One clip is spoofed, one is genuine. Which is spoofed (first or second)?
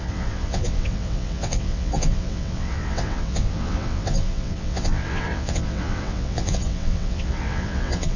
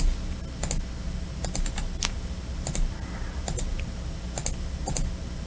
first